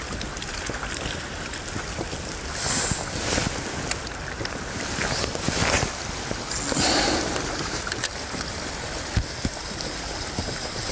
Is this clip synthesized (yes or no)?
no